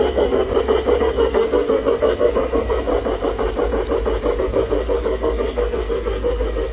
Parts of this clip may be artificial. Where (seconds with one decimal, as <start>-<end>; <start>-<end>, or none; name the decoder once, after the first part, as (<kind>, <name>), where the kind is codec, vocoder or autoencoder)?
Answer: 0.0-0.5 (codec, SNAC); 1.0-2.9; 4.4-6.7